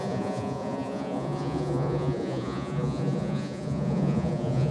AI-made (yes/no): yes